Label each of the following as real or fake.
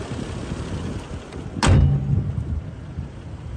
real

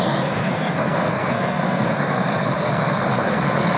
fake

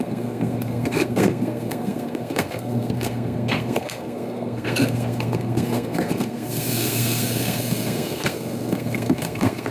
fake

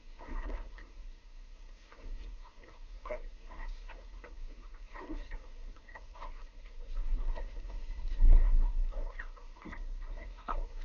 fake